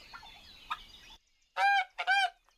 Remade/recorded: recorded